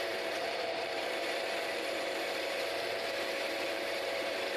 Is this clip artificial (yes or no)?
yes